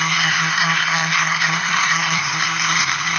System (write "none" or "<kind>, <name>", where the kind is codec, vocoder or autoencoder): codec, SNAC